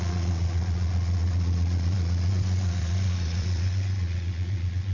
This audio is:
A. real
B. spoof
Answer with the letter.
B